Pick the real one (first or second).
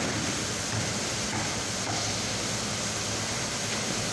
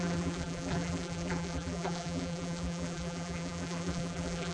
first